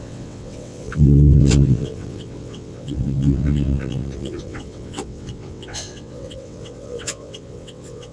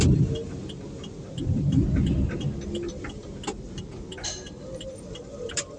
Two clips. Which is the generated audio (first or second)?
first